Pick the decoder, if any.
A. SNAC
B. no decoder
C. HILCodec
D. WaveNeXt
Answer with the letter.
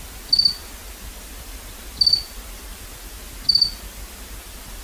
B